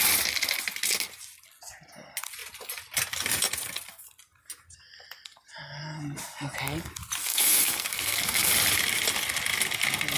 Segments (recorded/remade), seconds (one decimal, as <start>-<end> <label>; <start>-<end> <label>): 0.0-7.2 recorded; 7.2-8.5 remade; 8.5-10.2 recorded